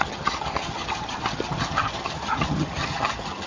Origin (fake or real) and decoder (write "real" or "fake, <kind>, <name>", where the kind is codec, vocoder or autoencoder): fake, vocoder, HiFi-GAN